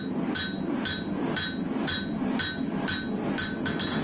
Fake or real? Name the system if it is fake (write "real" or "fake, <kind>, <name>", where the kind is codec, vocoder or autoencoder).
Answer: real